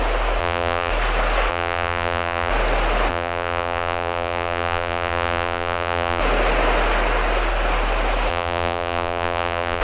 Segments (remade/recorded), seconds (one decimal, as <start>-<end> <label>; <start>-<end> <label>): 0.0-0.4 recorded; 0.4-0.9 remade; 0.9-1.5 recorded; 1.5-2.5 remade; 2.5-3.1 recorded; 3.1-6.2 remade; 6.2-8.3 recorded; 8.3-9.8 remade